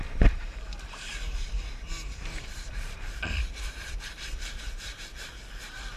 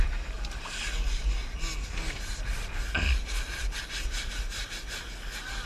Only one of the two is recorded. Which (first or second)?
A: second